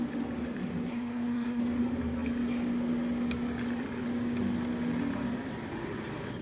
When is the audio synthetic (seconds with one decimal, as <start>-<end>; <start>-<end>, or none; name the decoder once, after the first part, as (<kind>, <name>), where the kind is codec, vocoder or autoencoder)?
0.9-1.6 (codec, SNAC)